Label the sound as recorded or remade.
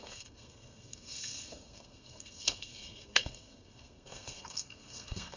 remade